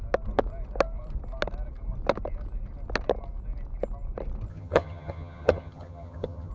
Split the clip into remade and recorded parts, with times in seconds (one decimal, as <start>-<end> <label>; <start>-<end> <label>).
0.0-4.5 recorded; 4.5-6.5 remade